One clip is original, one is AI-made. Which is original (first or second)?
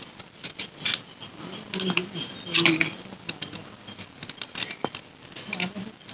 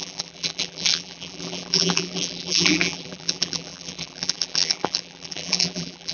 first